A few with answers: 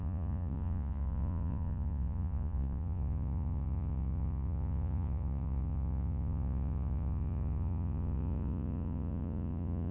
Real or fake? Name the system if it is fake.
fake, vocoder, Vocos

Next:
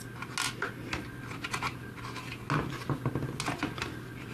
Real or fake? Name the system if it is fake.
real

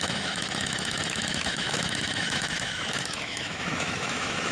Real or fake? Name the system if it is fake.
fake, autoencoder, DAC-VAE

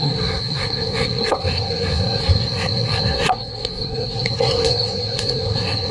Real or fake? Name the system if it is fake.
fake, codec, SNAC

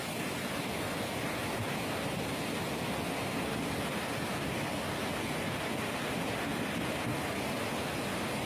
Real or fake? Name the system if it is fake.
real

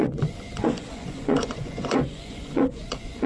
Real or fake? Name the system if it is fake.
fake, vocoder, Vocos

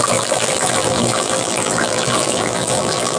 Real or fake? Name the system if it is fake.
fake, vocoder, BigVGAN v2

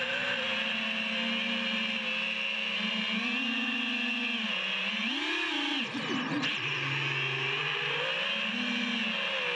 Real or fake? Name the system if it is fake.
real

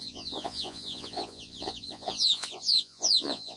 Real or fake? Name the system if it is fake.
fake, vocoder, Vocos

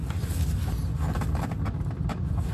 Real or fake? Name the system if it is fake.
real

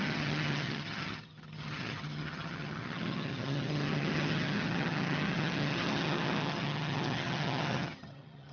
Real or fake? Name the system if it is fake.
fake, vocoder, HiFi-GAN